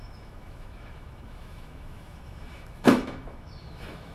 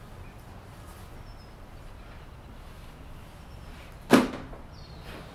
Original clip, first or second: second